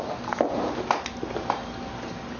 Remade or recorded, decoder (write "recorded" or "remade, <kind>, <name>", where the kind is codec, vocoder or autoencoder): recorded